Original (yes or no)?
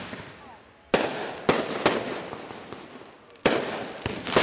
yes